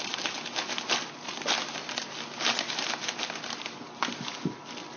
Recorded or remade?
recorded